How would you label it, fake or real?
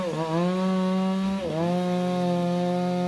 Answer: real